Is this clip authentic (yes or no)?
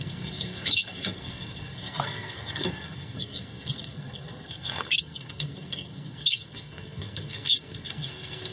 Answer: no